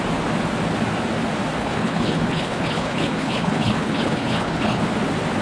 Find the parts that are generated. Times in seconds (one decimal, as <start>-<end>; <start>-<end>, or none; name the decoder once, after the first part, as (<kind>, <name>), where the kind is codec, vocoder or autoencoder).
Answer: 1.6-4.8 (codec, HILCodec)